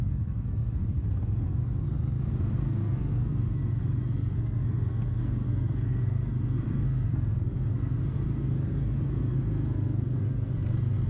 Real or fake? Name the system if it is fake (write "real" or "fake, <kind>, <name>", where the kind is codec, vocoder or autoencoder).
fake, codec, SNAC